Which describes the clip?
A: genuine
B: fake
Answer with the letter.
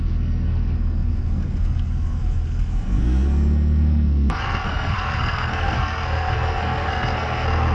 B